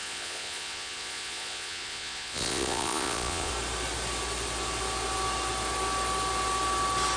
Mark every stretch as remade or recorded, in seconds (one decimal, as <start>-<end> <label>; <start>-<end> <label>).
0.0-3.5 remade; 3.5-7.2 recorded